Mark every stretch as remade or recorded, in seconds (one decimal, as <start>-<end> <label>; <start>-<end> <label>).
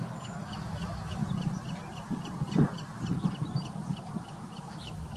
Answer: 0.0-1.2 remade; 1.2-4.3 recorded; 4.3-5.2 remade